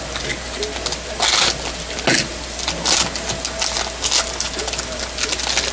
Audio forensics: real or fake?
real